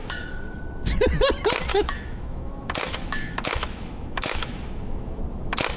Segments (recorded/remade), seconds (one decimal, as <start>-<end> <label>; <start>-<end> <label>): 0.0-0.6 remade; 0.6-1.7 recorded; 1.7-5.2 remade; 5.2-5.8 recorded

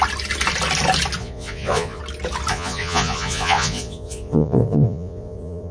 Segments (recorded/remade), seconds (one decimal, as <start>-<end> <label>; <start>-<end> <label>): 0.0-1.2 recorded; 1.2-2.0 remade; 2.0-2.5 recorded; 2.5-5.7 remade

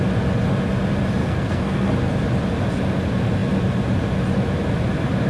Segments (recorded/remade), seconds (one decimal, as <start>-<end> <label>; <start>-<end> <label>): 0.0-1.2 recorded; 1.2-2.1 remade; 2.1-5.3 recorded